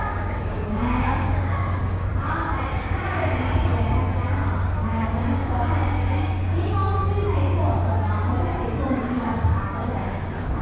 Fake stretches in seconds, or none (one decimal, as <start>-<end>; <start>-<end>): 0.0-2.1; 2.7-3.7; 4.9-6.8; 8.9-10.6